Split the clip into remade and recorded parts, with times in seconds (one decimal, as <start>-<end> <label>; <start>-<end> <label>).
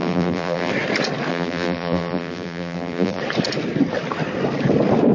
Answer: 0.0-0.7 remade; 0.7-1.3 recorded; 1.3-3.2 remade; 3.2-5.1 recorded